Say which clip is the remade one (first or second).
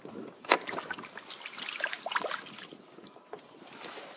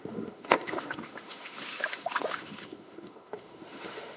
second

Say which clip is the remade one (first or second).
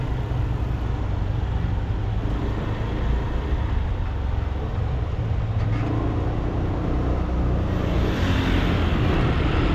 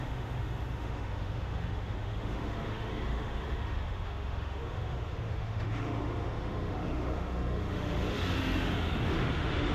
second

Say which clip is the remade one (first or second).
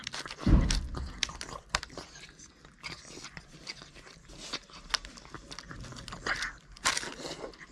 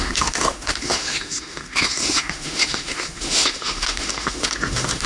second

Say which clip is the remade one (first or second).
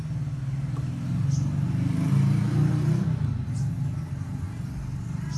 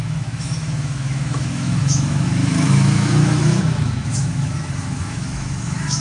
second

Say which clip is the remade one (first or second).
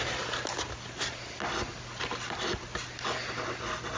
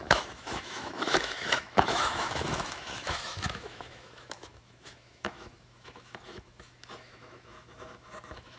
second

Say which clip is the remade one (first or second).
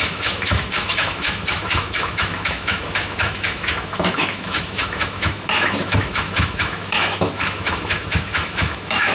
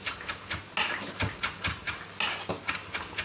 first